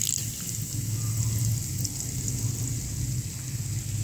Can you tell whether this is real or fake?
real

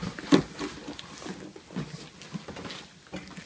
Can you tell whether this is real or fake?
real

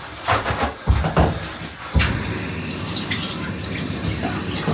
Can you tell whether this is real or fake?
real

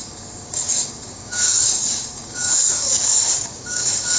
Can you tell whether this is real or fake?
fake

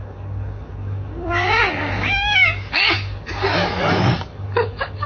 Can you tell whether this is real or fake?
fake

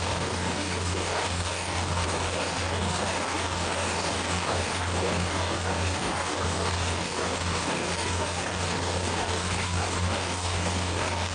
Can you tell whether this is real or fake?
fake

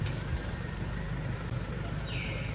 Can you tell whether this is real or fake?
real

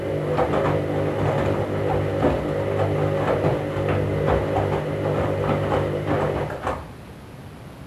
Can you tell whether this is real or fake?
real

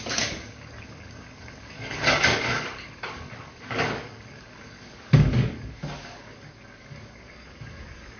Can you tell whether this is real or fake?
fake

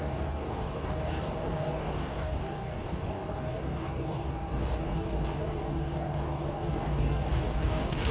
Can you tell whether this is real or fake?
fake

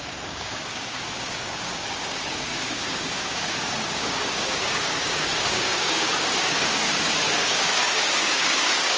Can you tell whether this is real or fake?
fake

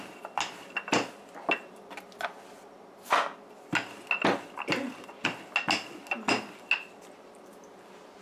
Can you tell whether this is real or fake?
real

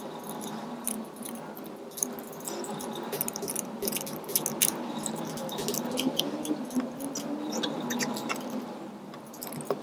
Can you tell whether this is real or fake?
real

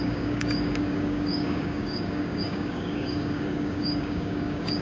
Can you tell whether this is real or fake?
fake